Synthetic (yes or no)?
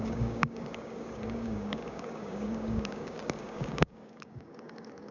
yes